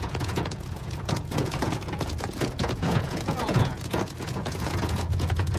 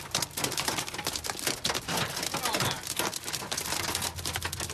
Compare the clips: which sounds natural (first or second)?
second